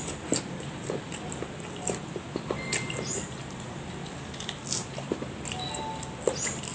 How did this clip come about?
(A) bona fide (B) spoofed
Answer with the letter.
A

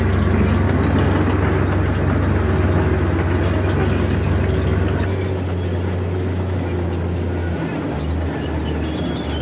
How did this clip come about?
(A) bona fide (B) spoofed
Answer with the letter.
A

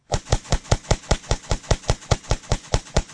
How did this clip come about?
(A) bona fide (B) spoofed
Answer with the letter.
B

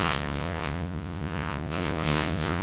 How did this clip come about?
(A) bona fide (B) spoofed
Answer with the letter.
B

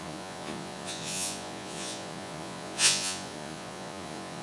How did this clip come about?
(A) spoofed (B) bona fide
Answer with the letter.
A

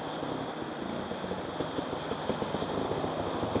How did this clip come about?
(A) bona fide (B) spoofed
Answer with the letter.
A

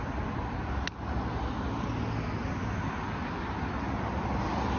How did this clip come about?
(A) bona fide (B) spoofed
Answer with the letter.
A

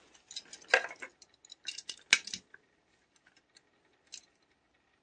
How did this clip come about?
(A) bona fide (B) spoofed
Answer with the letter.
A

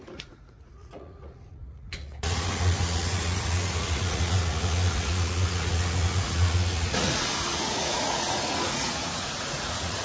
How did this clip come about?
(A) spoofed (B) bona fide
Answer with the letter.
A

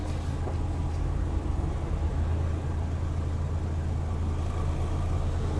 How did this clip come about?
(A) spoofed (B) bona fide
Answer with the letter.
B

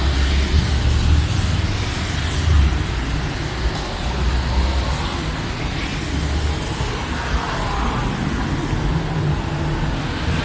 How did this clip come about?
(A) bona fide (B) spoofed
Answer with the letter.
A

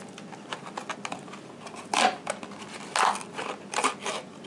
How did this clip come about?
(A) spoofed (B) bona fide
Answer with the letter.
B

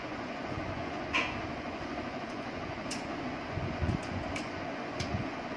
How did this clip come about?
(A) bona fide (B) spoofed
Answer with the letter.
B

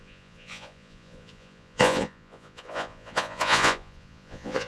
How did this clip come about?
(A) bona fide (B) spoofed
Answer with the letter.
B